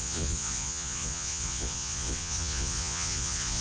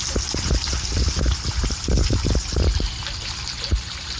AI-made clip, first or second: first